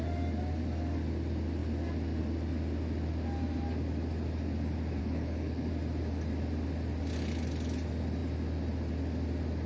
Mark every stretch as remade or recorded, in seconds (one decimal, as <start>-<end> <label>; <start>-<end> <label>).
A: 0.0-5.0 recorded; 5.0-5.7 remade; 5.7-9.7 recorded